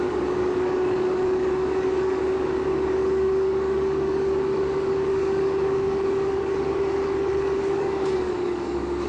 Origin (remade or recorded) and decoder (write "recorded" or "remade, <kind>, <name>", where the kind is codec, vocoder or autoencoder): remade, codec, DAC